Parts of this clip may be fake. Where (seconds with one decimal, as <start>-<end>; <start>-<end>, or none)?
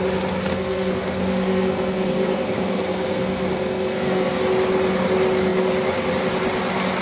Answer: 0.5-4.4